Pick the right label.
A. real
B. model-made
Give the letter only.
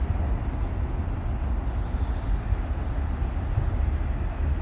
A